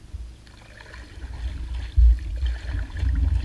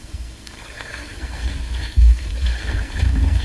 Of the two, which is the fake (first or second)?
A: second